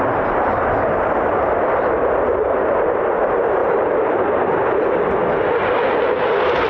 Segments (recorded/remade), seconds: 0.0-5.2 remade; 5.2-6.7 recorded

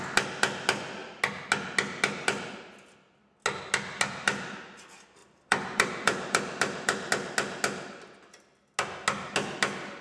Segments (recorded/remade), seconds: 0.0-5.2 recorded; 5.2-7.1 remade; 7.1-10.0 recorded

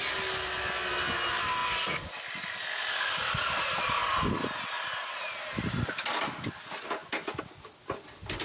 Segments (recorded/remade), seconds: 0.0-1.6 recorded; 1.6-3.0 remade; 3.0-8.4 recorded

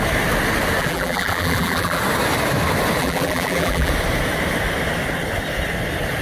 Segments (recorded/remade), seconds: 0.0-0.8 recorded; 0.8-2.0 remade; 2.0-3.0 recorded; 3.0-3.9 remade; 3.9-6.2 recorded

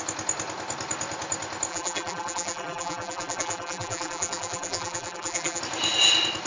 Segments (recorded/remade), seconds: 0.0-1.7 recorded; 1.7-5.6 remade; 5.6-6.5 recorded

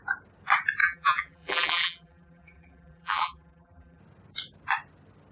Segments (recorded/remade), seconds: 0.0-0.8 recorded; 0.8-4.0 remade; 4.0-5.3 recorded